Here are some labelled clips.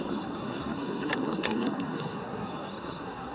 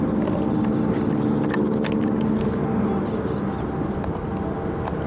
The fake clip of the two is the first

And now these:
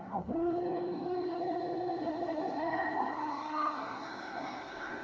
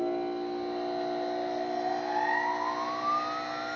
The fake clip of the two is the first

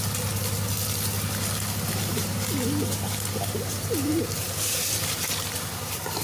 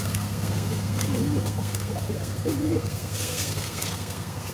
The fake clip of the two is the second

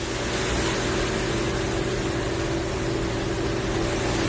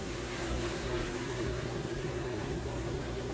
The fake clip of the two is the second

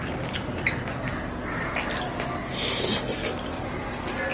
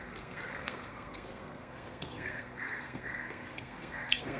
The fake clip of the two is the second